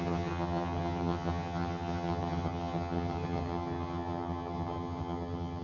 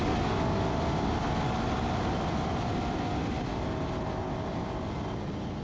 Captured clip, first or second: second